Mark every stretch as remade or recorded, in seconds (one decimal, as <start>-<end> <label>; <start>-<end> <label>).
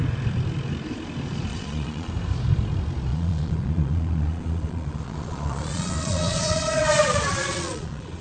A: 0.0-1.5 recorded; 1.5-2.1 remade; 2.1-3.1 recorded; 3.1-8.2 remade